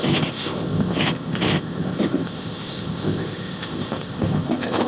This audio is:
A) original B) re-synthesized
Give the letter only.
B